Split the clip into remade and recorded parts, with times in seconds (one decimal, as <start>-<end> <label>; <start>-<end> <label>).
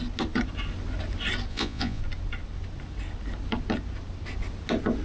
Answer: 0.0-1.5 recorded; 1.5-2.0 remade; 2.0-5.0 recorded